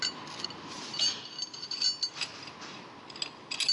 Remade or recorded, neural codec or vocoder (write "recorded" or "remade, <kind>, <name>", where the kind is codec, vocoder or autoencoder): recorded